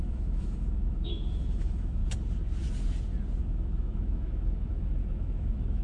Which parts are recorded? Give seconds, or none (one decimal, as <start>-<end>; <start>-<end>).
2.0-3.4